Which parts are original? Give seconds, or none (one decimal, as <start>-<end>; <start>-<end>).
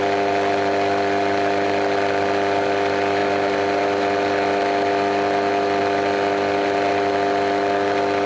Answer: 0.0-8.3